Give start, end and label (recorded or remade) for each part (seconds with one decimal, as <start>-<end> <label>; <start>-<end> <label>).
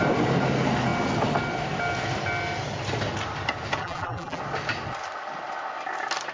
0.0-3.8 recorded; 3.8-4.4 remade; 4.4-6.3 recorded